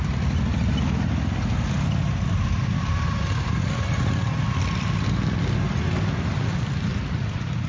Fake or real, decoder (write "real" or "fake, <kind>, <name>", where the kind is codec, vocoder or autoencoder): real